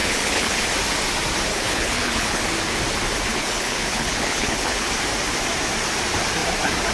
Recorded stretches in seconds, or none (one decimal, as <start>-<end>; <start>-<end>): 0.6-1.5; 2.4-3.3; 4.9-6.9